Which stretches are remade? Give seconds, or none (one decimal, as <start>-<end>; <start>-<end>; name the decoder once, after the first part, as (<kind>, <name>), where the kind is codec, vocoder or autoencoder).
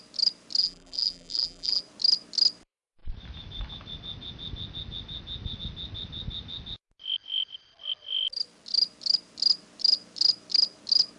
0.6-1.8 (vocoder, BigVGAN v2)